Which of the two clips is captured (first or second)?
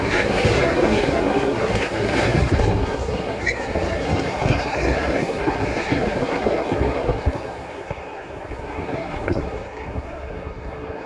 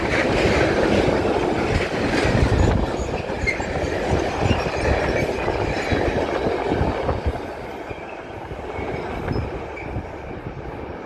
second